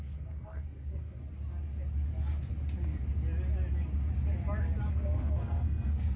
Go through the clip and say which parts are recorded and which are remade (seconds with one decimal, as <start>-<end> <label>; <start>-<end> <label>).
0.0-1.2 remade; 1.2-4.9 recorded; 4.9-6.2 remade